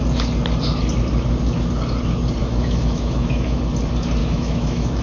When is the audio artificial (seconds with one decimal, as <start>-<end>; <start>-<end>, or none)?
2.4-3.6; 4.2-5.0